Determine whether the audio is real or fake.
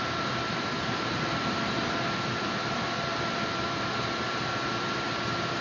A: fake